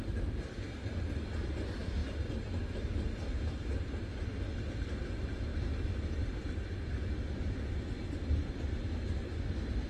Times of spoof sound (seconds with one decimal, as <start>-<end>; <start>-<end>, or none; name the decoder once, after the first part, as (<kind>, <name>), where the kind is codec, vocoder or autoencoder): 3.3-3.8 (vocoder, BigVGAN v2)